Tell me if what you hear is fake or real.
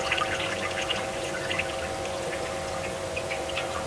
fake